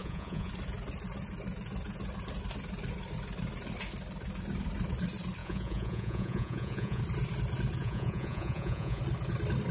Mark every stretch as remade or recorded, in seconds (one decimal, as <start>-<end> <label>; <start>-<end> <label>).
0.0-0.5 remade; 0.5-5.4 recorded; 5.4-7.0 remade; 7.0-7.8 recorded; 7.8-9.0 remade; 9.0-9.7 recorded